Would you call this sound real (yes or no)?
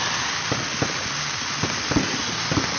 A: yes